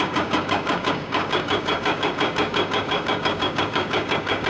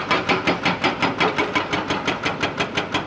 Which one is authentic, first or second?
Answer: second